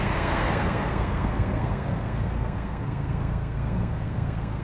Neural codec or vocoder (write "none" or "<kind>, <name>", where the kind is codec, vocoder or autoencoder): codec, SNAC